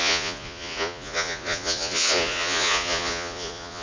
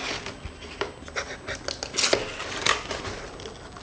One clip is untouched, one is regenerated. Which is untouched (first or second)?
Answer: second